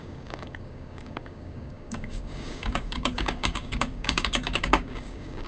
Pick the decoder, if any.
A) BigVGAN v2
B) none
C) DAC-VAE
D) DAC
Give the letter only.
D